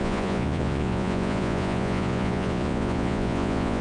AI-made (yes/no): yes